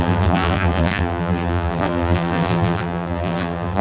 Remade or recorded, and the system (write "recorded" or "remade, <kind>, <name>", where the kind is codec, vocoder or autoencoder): remade, vocoder, BigVGAN v2